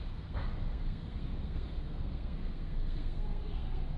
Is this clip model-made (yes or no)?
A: yes